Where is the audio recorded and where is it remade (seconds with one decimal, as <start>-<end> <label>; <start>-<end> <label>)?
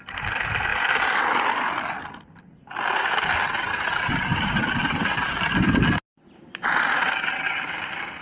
0.0-8.2 recorded